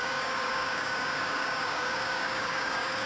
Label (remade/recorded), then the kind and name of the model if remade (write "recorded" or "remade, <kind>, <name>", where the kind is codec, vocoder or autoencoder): remade, codec, DAC